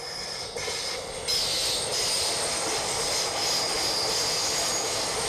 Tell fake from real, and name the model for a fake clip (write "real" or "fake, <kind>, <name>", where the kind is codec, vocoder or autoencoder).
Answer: real